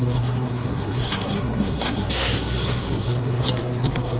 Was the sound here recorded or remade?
remade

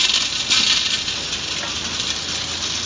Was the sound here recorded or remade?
recorded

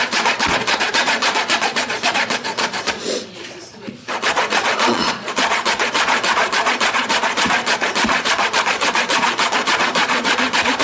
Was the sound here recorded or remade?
remade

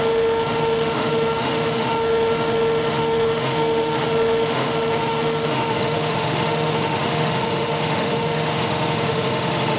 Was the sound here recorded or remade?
remade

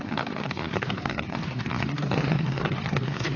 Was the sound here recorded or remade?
remade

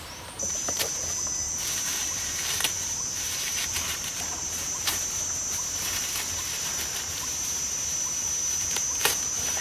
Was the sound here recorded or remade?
remade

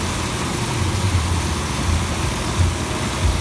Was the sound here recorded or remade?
recorded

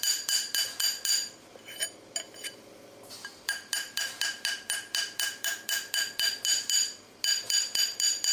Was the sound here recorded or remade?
recorded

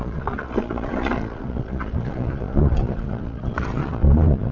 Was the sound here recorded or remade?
remade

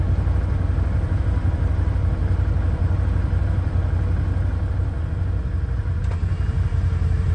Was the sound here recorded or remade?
recorded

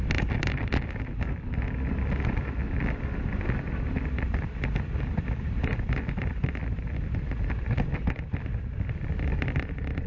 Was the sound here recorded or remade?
recorded